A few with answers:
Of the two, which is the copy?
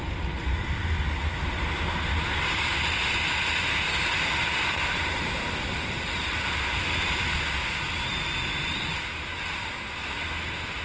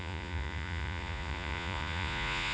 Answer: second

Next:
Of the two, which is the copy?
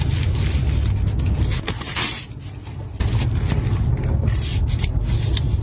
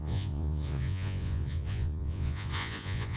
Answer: second